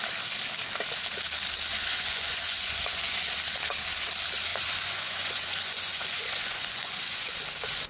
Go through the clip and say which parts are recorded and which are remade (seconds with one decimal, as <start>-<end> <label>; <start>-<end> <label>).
0.0-1.7 recorded; 1.7-3.3 remade; 3.3-4.5 recorded; 4.5-7.3 remade; 7.3-7.9 recorded